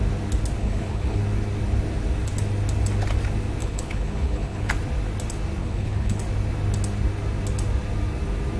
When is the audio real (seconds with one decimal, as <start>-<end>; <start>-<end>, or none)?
0.0-0.6; 1.2-3.6; 4.7-5.6; 6.2-8.6